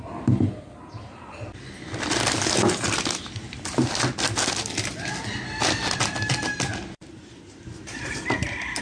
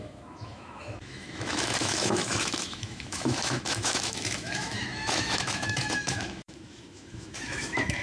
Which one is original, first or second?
first